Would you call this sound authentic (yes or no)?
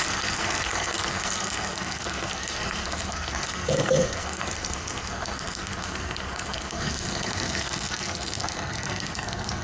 no